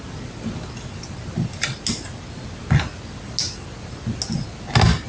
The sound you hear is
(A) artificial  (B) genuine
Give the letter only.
B